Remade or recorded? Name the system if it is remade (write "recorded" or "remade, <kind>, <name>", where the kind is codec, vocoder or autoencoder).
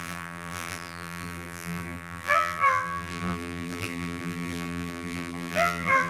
remade, vocoder, BigVGAN v2